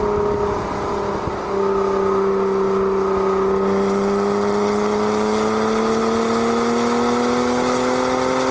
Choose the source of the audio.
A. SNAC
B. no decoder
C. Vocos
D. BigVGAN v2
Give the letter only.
B